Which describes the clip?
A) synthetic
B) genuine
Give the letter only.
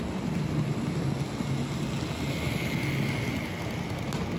B